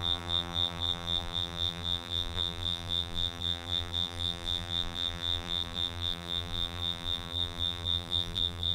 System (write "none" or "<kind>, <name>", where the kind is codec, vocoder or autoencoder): vocoder, BigVGAN v2